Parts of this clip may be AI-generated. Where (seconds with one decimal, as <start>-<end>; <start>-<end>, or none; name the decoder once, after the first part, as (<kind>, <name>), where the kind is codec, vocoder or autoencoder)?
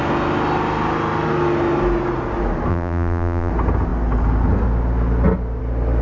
2.7-3.5 (vocoder, BigVGAN v2)